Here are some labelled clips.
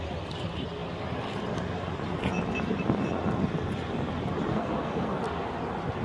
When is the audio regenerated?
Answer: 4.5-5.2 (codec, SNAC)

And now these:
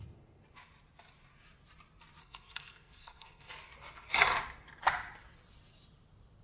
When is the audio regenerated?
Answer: 2.2-3.5 (codec, SNAC)

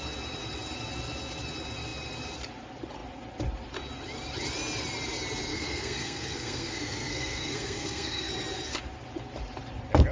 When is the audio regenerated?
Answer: 5.5-8.3 (codec, SNAC)